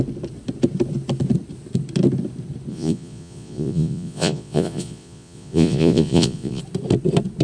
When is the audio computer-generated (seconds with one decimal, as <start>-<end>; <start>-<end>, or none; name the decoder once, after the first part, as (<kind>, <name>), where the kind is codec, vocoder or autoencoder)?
2.7-6.6 (vocoder, Vocos)